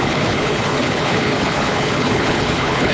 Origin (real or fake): fake